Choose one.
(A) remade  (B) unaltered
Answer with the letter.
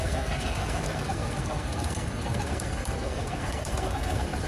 A